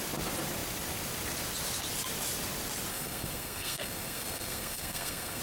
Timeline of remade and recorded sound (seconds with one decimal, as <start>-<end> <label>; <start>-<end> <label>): 0.0-2.9 recorded; 2.9-5.4 remade